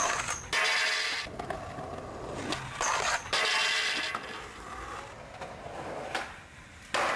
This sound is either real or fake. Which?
real